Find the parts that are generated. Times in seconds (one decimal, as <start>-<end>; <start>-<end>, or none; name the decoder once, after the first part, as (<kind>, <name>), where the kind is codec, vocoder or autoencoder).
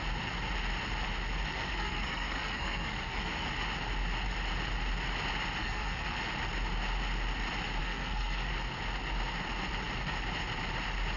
1.5-3.5 (codec, SNAC); 5.6-6.2; 7.8-8.5